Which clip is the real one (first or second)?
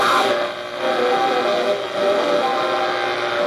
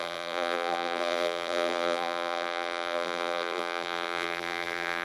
first